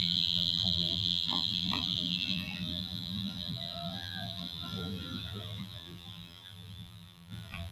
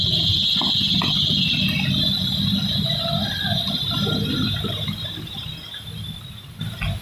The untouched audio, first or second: second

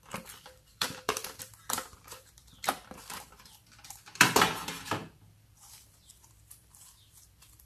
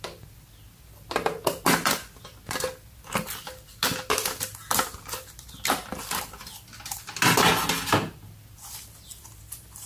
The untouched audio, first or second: second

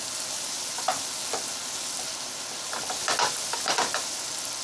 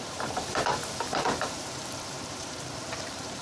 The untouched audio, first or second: first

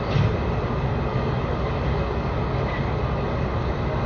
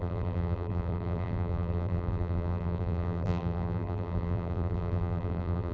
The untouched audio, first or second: first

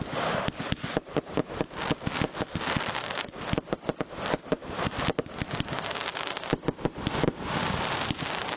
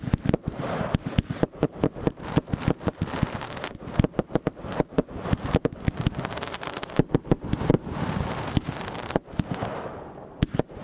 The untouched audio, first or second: first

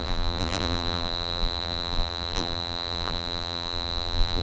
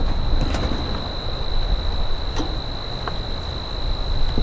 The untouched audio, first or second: second